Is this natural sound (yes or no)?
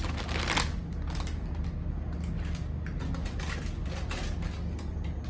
yes